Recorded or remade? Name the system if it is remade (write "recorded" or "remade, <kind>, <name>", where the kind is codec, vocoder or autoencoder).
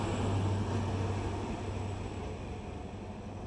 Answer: recorded